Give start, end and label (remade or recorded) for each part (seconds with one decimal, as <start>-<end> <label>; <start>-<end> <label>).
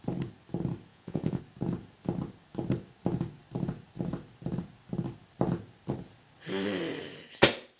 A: 0.0-0.9 recorded; 0.9-1.4 remade; 1.4-7.8 recorded